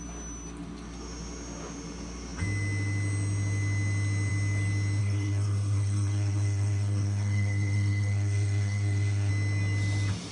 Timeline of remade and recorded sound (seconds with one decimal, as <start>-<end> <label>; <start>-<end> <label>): 0.0-5.0 recorded; 5.0-9.3 remade; 9.3-10.3 recorded